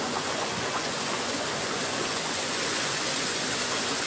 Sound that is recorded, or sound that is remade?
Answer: remade